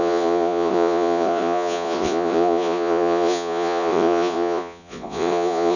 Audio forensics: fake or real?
fake